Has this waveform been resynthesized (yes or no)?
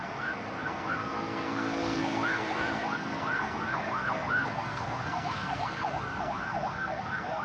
yes